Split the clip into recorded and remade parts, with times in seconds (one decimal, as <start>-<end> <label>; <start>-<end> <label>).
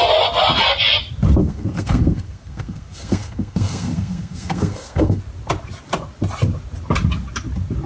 0.0-1.4 recorded; 1.4-5.2 remade; 5.2-7.9 recorded